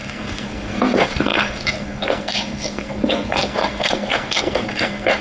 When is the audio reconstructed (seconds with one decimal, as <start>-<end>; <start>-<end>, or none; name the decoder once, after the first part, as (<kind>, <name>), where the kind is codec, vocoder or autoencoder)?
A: 0.0-5.2 (codec, SNAC)